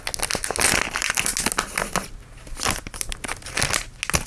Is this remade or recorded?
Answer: recorded